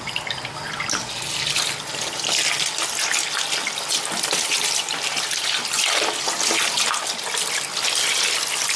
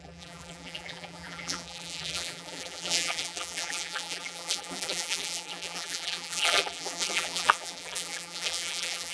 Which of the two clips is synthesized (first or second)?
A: second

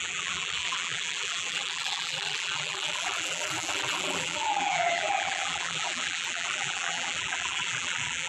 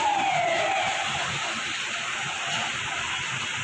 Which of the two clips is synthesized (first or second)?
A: first